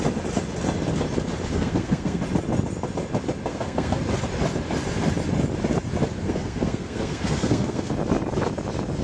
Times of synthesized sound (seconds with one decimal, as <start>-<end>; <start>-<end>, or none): 1.5-2.2; 3.5-4.0; 6.2-7.9

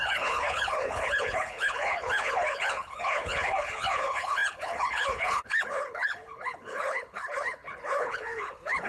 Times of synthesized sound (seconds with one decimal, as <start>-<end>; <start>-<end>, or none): 0.0-8.9

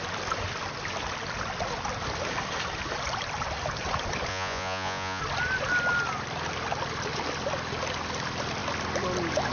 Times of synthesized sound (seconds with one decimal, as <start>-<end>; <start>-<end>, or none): 4.3-5.2

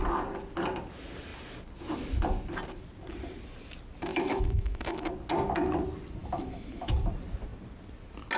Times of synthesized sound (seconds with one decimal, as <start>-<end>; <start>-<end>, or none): 4.1-5.1; 6.2-6.9

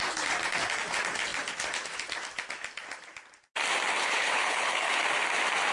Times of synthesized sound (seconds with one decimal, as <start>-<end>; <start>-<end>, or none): 4.0-5.0

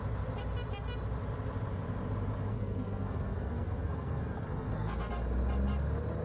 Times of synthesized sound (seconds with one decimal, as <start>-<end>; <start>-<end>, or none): 2.5-5.1

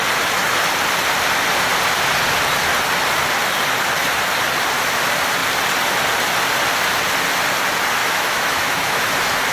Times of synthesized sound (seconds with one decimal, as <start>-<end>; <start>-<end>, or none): 8.0-9.0